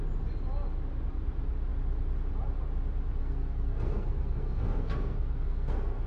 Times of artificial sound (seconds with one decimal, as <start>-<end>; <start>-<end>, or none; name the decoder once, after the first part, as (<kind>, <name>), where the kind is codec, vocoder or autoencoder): 3.2-6.1 (codec, SNAC)

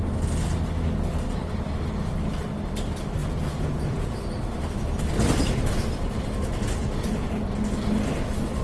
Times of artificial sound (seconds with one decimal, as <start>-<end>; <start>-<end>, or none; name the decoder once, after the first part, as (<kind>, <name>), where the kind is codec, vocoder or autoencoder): 3.2-4.1 (vocoder, Vocos); 6.8-7.3

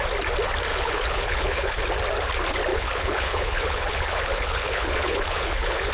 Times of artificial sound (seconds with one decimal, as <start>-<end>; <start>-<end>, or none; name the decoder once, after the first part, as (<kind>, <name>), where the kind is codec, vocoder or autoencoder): 0.7-1.8 (codec, HILCodec); 2.7-5.9

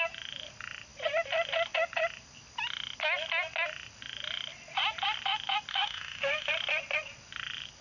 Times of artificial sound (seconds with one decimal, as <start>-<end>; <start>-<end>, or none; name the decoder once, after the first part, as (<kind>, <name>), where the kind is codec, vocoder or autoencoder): 5.7-6.5 (autoencoder, DAC-VAE)

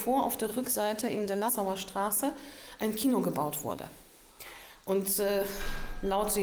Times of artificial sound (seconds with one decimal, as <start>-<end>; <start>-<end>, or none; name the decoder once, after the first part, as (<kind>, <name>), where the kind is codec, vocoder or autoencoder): 0.5-1.5 (autoencoder, DAC-VAE); 3.7-4.4

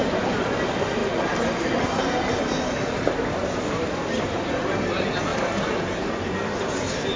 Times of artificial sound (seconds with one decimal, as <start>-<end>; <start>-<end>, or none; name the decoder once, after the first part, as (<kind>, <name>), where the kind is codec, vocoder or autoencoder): 0.0-0.5 (vocoder, BigVGAN v2)